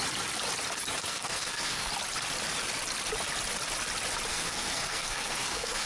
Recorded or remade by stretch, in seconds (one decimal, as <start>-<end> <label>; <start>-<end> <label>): 0.0-1.0 recorded; 1.0-1.9 remade; 1.9-4.3 recorded; 4.3-5.9 remade